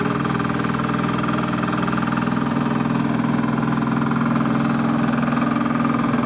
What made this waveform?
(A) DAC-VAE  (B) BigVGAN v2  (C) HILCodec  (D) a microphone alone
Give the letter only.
D